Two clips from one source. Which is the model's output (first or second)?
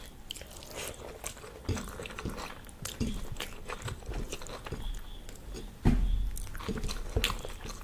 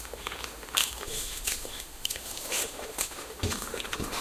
second